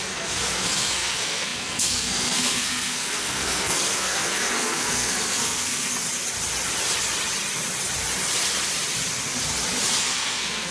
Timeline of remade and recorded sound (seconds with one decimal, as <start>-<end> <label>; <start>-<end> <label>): 0.0-5.9 remade; 5.9-10.0 recorded; 10.0-10.7 remade